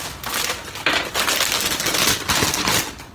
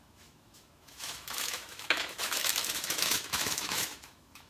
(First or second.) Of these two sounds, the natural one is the first